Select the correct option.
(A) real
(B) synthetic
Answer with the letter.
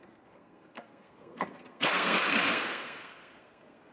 B